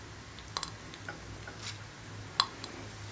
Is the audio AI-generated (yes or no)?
no